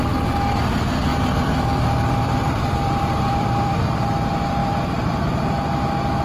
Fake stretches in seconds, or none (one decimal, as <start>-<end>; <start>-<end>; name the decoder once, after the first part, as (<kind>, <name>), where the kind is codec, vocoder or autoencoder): 1.1-3.8 (vocoder, BigVGAN v2); 4.6-5.2